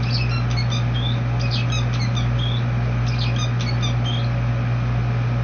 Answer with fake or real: real